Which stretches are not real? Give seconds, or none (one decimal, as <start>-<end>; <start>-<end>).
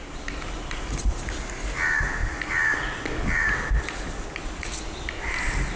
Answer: none